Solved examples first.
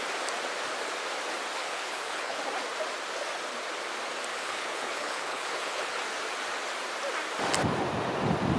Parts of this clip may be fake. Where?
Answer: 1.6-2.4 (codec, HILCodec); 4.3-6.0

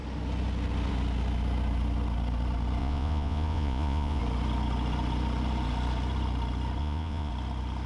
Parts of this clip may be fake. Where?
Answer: 2.8-4.2 (vocoder, Vocos); 6.8-7.3